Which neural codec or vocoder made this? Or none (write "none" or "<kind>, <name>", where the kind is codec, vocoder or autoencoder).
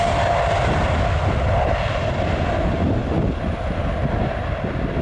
none